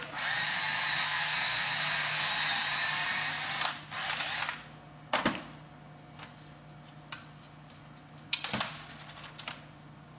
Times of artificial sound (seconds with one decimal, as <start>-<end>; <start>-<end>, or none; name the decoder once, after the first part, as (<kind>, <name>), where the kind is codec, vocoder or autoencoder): 1.0-2.3 (codec, SNAC)